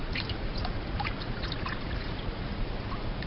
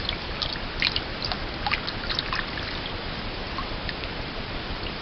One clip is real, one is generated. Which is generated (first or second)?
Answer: first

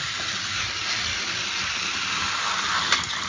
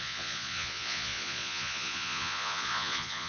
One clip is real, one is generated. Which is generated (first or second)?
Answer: second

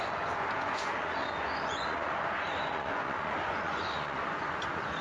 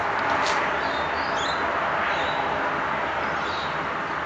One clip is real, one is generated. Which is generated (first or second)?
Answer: first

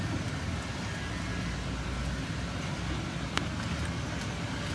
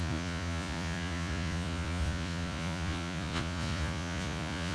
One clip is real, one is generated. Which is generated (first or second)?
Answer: second